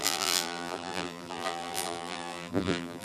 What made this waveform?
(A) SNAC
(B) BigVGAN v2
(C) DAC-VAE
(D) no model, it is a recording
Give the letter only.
B